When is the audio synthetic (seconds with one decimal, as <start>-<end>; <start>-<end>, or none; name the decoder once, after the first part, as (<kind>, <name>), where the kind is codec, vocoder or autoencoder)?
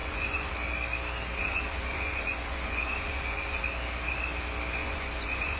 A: 0.0-0.5 (vocoder, Vocos); 1.4-3.6; 4.8-5.6